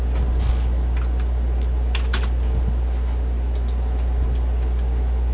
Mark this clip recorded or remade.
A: recorded